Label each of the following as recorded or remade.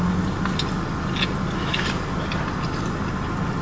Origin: recorded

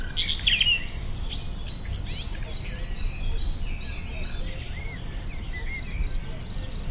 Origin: recorded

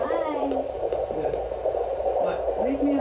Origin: remade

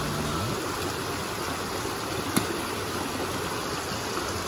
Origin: recorded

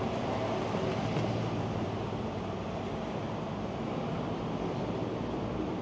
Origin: recorded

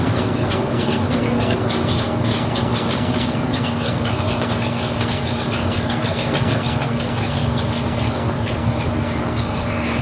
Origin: remade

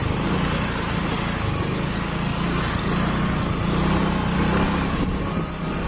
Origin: recorded